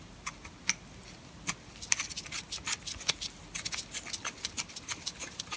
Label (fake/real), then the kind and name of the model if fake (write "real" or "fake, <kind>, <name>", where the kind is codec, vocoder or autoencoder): real